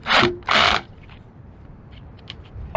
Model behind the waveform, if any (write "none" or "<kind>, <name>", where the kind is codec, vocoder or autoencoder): vocoder, BigVGAN v2